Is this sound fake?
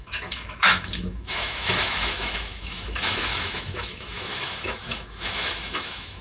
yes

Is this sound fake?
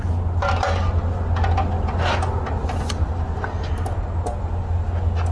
no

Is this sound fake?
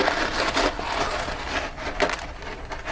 no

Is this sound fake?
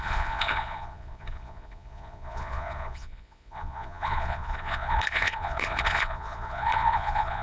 yes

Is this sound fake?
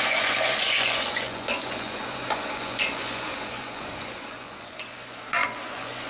yes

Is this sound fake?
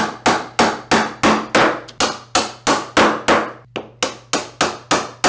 no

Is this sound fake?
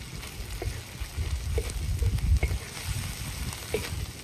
no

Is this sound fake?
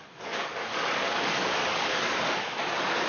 yes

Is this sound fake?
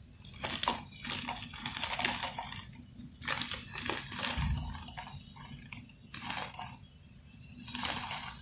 no